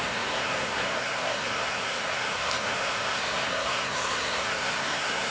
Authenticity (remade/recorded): remade